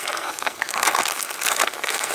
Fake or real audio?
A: fake